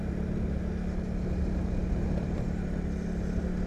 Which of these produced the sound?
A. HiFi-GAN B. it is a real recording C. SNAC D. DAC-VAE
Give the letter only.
B